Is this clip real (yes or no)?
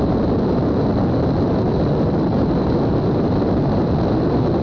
yes